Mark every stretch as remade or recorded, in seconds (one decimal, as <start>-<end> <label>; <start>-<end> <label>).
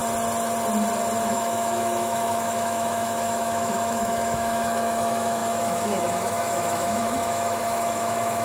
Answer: 0.0-1.3 recorded; 1.3-8.4 remade